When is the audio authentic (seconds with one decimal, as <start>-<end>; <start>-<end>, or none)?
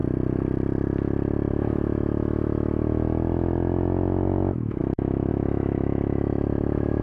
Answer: 0.0-1.5